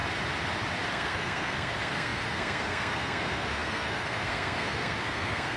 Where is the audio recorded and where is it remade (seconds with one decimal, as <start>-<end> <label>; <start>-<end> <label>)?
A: 0.0-0.9 recorded; 0.9-5.6 remade